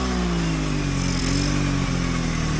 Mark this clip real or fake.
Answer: real